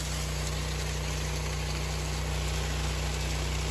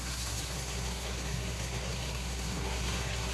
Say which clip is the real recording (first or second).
first